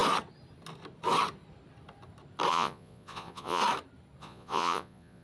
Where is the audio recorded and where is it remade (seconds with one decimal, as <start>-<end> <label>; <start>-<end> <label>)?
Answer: 0.0-2.5 recorded; 2.5-3.6 remade; 3.6-4.2 recorded; 4.2-5.2 remade